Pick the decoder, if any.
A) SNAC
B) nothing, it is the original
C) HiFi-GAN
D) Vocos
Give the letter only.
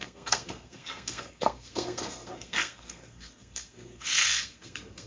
A